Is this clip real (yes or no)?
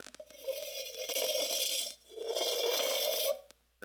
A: yes